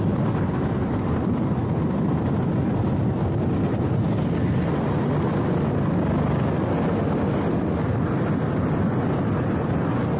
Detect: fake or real real